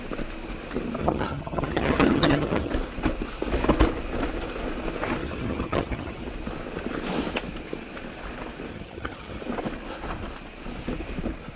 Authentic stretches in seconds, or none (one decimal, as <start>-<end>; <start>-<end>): 0.0-1.0; 2.7-5.2; 6.2-8.7; 9.4-11.6